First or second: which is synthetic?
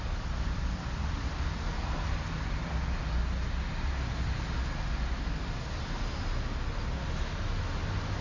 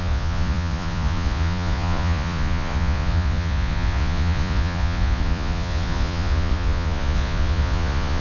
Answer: second